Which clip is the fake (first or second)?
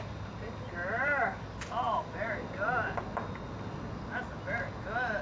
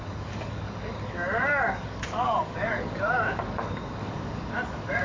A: second